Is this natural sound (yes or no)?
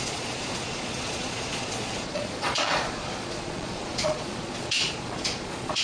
no